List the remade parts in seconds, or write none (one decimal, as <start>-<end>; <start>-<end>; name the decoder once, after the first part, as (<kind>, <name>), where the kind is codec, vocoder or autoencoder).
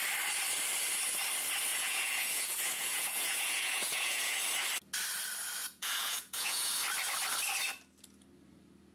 1.7-4.4 (vocoder, Vocos); 5.6-6.7